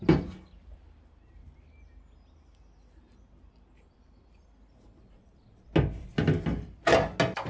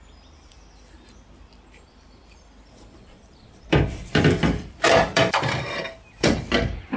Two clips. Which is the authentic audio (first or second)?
first